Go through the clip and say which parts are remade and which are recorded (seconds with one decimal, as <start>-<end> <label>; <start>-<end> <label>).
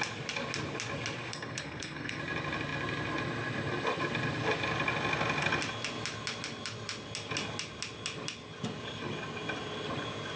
0.0-1.3 recorded; 1.3-2.2 remade; 2.2-10.4 recorded